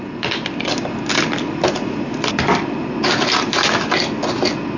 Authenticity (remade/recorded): recorded